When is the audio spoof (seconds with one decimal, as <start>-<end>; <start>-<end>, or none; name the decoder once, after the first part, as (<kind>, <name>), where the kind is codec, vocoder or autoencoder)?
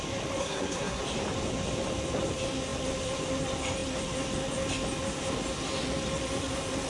0.4-1.0 (codec, SNAC)